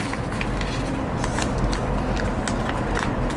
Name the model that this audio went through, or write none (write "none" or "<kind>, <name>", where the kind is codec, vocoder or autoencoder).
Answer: none